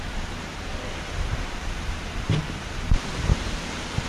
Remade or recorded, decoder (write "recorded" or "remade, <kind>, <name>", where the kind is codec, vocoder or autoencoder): remade, vocoder, BigVGAN v2